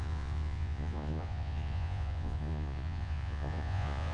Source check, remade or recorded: remade